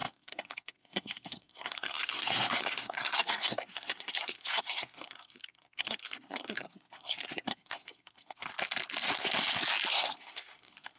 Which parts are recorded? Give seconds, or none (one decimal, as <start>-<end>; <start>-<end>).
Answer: 8.5-9.9